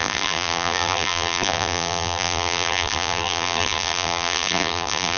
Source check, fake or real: fake